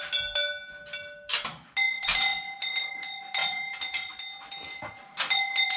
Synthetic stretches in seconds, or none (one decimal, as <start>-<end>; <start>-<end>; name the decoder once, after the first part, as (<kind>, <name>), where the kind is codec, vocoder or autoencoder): none